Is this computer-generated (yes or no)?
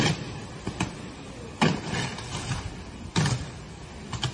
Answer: no